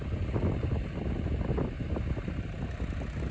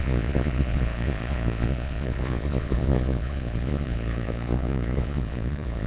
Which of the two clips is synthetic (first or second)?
second